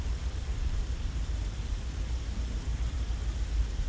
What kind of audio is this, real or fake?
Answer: fake